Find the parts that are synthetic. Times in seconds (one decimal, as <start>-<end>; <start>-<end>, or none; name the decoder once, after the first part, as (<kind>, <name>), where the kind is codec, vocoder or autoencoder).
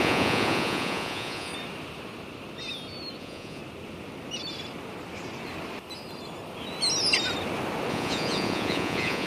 0.0-1.5 (vocoder, Vocos); 3.2-3.6; 7.9-9.3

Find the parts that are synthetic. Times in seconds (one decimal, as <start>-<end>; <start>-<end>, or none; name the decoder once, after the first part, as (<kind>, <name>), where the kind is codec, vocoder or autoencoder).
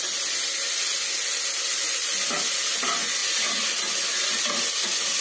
0.9-1.4 (vocoder, BigVGAN v2); 3.2-4.4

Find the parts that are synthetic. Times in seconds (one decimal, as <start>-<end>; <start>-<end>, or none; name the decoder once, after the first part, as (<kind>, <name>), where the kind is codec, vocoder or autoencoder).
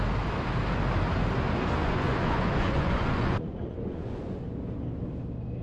1.8-4.4 (vocoder, Vocos)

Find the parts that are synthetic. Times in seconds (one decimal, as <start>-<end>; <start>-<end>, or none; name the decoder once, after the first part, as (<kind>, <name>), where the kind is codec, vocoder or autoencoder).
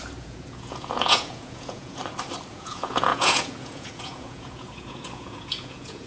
0.0-2.0 (vocoder, Vocos); 2.5-6.1